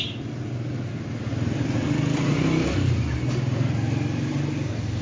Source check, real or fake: real